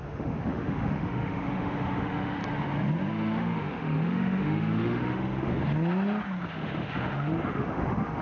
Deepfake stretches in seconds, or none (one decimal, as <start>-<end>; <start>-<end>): 0.0-2.4; 3.1-5.5; 6.5-8.2